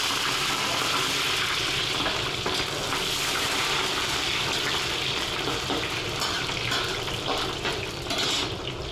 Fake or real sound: real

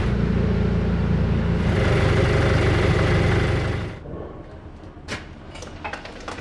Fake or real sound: real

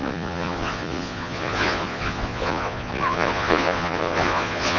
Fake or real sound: fake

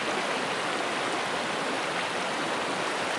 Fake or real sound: real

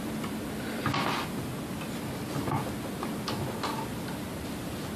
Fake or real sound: real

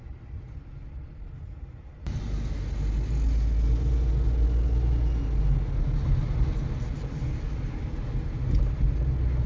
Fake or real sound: real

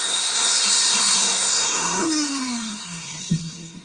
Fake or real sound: fake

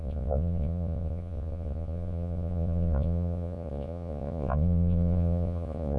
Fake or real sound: fake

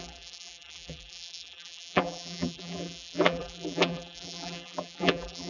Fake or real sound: fake